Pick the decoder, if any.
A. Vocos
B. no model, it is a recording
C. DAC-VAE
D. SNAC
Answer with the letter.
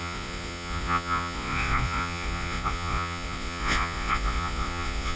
A